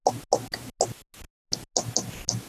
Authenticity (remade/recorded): recorded